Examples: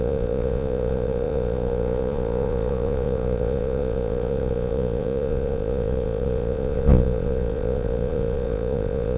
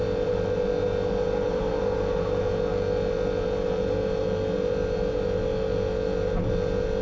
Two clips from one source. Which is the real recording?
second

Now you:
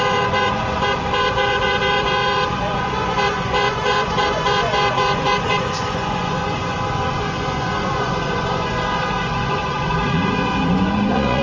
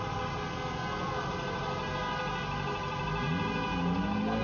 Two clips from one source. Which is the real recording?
second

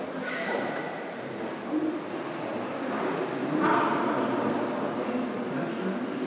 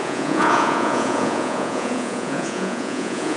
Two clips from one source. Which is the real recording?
first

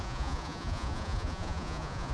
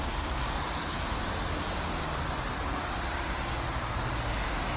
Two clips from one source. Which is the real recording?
second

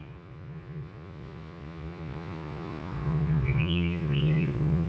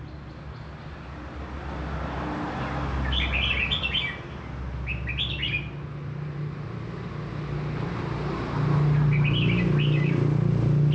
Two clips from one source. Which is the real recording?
second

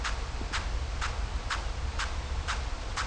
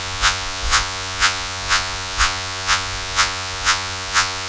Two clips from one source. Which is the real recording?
first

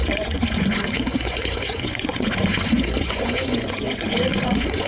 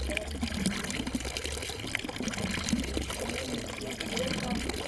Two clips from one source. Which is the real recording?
second